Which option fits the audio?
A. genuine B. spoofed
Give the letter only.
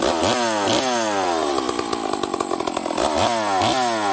A